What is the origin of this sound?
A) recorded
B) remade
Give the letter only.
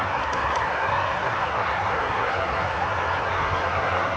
B